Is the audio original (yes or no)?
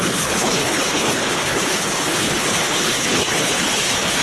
no